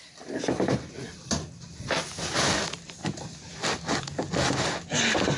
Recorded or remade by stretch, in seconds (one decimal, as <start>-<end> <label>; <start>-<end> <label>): 0.0-3.0 recorded; 3.0-4.0 remade; 4.0-5.4 recorded